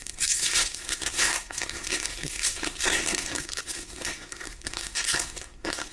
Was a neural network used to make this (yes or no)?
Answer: yes